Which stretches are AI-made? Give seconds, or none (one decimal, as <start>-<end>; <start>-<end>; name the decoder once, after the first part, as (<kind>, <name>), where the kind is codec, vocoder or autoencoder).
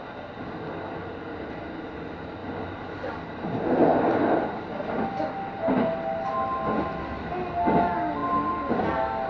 none